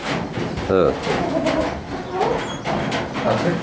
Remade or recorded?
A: recorded